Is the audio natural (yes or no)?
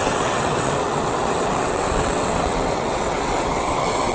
no